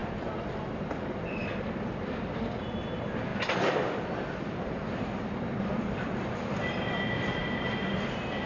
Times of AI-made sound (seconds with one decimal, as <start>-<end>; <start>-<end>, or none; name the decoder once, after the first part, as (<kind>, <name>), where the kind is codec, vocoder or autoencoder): 0.0-0.8 (vocoder, BigVGAN v2); 1.4-2.6; 3.3-7.4